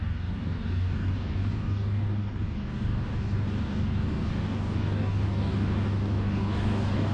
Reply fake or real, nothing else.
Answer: fake